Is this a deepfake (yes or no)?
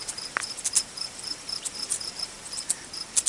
yes